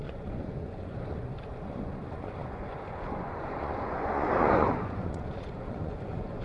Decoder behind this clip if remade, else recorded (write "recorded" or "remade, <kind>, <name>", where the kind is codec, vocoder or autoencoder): remade, vocoder, Vocos